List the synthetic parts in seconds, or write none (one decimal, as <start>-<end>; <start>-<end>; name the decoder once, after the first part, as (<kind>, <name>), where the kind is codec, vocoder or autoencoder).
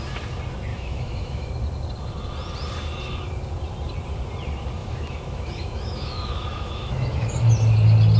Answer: 0.7-1.5 (autoencoder, DAC-VAE); 4.8-7.3